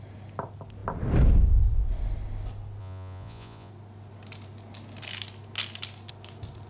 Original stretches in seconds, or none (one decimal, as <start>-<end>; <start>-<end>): 0.0-2.8; 3.7-6.7